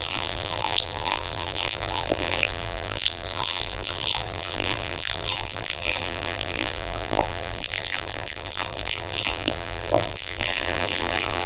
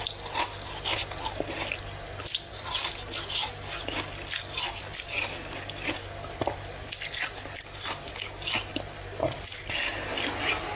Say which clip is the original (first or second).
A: second